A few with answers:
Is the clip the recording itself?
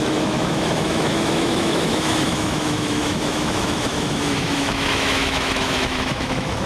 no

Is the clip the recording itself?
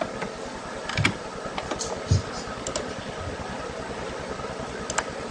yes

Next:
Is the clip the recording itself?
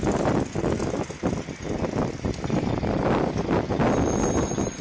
yes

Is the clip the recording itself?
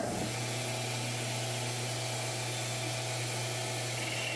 yes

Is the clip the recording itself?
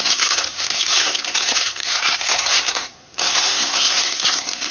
no